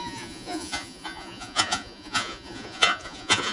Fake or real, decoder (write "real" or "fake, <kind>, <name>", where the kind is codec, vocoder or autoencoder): fake, vocoder, Vocos